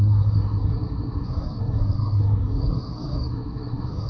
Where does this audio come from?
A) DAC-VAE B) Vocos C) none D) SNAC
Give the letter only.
D